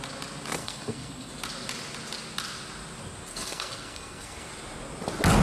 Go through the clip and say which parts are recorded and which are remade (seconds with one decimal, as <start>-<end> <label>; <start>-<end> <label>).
0.0-0.6 recorded; 0.6-1.3 remade; 1.3-3.3 recorded; 3.3-4.5 remade; 4.5-5.4 recorded